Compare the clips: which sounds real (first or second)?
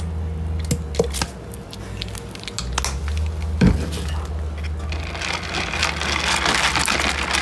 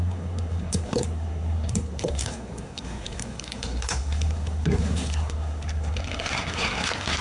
first